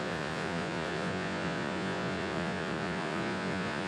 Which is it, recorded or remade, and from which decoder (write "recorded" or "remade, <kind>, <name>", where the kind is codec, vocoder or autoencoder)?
remade, vocoder, Vocos